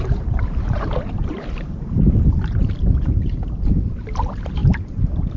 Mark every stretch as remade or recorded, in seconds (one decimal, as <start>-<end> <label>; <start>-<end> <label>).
0.0-5.4 remade